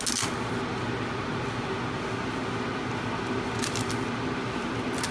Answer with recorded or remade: recorded